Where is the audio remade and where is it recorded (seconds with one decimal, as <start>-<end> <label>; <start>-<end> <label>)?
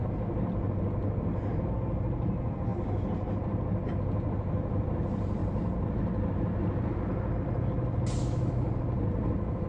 0.0-8.2 recorded; 8.2-8.7 remade; 8.7-9.7 recorded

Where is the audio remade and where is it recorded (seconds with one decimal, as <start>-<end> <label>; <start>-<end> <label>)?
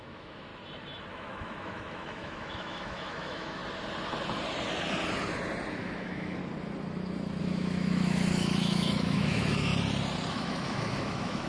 0.0-0.5 remade; 0.5-1.1 recorded; 1.1-3.6 remade; 3.6-5.7 recorded; 5.7-6.4 remade; 6.4-7.4 recorded; 7.4-9.7 remade; 9.7-10.3 recorded; 10.3-11.5 remade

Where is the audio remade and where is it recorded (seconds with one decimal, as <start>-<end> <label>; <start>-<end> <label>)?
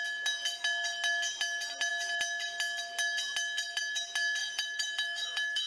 0.0-4.4 recorded; 4.4-5.7 remade